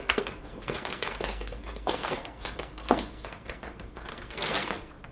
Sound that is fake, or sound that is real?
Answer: fake